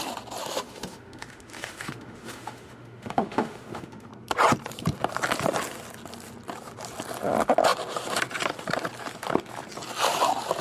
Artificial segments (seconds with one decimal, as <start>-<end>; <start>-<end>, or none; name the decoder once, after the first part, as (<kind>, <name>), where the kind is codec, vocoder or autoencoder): 0.4-4.1 (autoencoder, DAC-VAE)

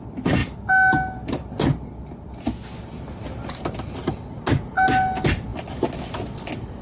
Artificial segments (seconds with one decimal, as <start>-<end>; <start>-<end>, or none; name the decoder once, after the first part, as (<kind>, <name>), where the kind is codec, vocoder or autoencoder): none

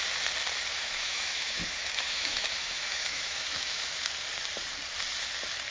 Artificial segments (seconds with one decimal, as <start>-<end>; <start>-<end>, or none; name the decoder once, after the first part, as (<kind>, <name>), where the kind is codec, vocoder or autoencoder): 0.7-4.1 (autoencoder, DAC-VAE)

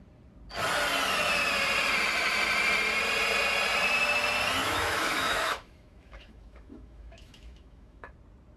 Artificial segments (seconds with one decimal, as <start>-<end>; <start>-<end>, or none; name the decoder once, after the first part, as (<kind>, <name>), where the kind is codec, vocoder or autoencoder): 4.6-8.1 (autoencoder, DAC-VAE)

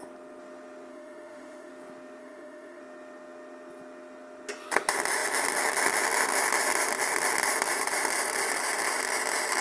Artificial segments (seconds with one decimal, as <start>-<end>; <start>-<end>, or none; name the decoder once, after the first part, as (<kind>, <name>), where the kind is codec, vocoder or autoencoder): 0.9-1.7 (autoencoder, DAC-VAE); 2.2-2.8

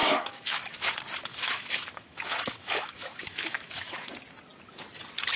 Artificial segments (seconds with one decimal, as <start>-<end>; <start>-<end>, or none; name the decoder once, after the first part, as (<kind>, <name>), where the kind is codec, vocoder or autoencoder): 0.0-0.9 (autoencoder, DAC-VAE); 1.3-4.1

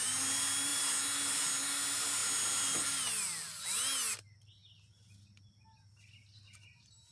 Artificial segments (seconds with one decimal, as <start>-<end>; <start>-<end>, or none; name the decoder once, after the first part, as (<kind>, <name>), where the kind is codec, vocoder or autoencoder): none